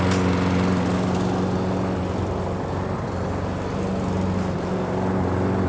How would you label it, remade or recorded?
recorded